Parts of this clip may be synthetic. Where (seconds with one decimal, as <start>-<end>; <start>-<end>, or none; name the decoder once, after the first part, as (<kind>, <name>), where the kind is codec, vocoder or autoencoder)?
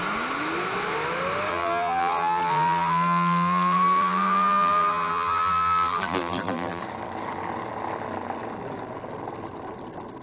1.5-6.8 (vocoder, BigVGAN v2)